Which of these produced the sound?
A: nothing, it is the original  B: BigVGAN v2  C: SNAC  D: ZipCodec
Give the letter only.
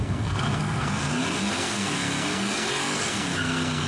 C